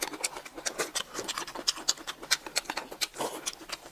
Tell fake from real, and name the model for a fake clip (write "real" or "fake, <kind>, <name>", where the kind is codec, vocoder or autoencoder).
real